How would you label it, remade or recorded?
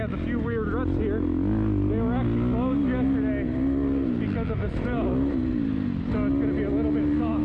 recorded